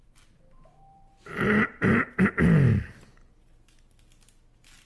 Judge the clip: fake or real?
real